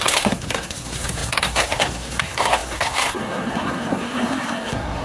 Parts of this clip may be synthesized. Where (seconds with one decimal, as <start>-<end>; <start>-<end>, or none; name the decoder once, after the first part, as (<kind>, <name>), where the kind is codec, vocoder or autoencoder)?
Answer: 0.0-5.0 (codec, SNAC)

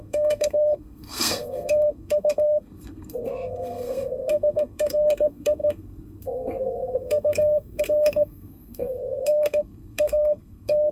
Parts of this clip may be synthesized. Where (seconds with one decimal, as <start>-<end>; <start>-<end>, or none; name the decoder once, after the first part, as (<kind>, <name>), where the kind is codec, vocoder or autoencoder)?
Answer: 0.0-10.9 (codec, SNAC)

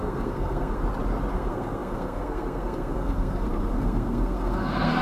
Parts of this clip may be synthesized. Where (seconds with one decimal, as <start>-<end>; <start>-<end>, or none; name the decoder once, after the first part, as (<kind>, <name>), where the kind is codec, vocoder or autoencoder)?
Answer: 0.0-0.8 (codec, SNAC); 1.3-5.0

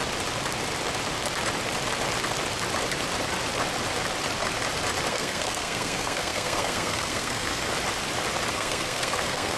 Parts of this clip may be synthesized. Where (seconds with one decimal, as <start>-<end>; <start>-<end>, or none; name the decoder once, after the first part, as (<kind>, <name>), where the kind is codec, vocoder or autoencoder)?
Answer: 5.1-7.7 (codec, SNAC); 8.5-9.6

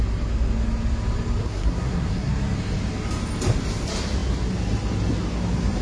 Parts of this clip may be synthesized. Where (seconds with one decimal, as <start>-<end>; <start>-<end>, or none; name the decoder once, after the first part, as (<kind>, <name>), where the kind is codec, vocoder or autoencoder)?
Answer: 1.4-2.3 (codec, SNAC)

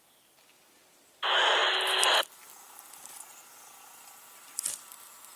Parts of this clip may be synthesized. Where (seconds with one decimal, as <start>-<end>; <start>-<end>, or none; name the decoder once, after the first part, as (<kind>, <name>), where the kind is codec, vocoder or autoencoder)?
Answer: none